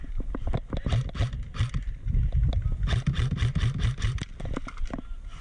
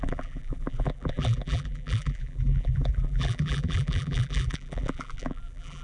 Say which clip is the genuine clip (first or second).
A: first